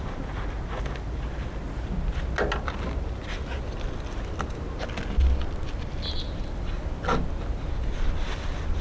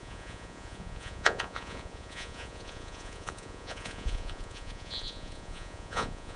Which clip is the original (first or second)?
first